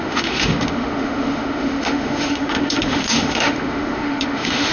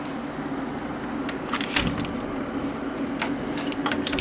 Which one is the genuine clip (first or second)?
second